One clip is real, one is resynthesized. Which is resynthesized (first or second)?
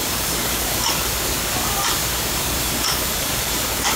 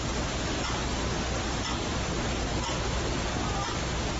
first